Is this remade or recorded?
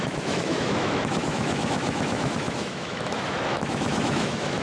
remade